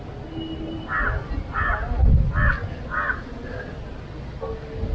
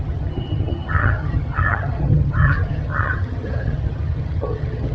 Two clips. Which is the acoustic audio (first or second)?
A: first